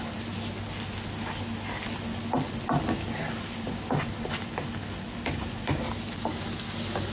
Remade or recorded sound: recorded